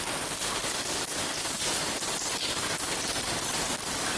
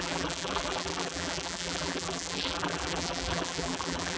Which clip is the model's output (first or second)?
second